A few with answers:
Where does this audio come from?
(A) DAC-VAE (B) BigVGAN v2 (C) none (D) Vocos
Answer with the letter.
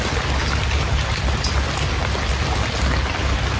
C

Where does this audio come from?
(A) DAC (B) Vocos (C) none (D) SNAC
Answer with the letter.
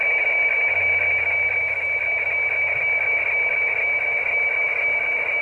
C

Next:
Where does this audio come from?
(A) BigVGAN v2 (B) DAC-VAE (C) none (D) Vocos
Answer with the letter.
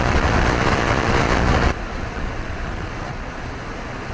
D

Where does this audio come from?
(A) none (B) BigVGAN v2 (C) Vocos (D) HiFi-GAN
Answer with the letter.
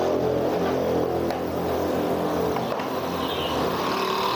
A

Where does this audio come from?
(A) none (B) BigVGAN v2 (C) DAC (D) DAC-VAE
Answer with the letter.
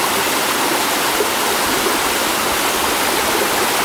A